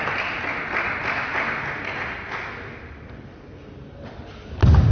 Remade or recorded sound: recorded